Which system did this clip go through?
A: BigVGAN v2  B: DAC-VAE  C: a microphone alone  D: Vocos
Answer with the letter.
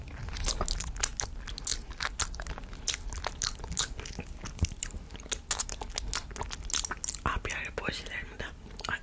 C